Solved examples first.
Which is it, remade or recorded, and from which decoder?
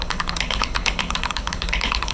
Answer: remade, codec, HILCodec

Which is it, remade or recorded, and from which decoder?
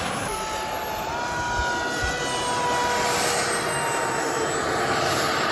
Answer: recorded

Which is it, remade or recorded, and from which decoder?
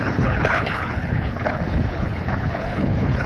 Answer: remade, codec, HILCodec